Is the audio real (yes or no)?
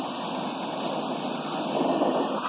yes